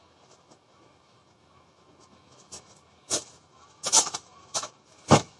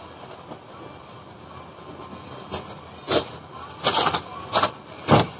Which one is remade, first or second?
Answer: first